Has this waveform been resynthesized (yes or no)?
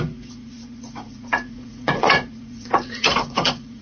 yes